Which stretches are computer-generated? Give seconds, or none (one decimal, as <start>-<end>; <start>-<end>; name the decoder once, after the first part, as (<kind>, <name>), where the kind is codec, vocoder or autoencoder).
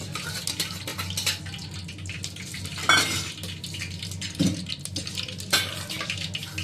none